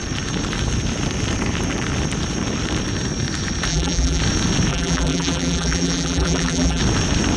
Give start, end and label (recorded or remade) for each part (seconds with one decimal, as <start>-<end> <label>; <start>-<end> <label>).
0.0-3.7 recorded; 3.7-4.2 remade; 4.2-4.7 recorded; 4.7-6.8 remade; 6.8-7.4 recorded